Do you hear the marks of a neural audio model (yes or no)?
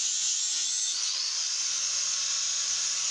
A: no